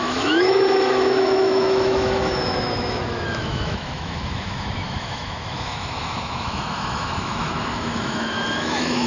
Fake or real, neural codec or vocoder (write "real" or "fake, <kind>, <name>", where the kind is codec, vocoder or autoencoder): fake, autoencoder, DAC-VAE